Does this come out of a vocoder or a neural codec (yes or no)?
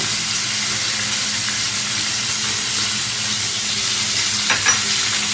no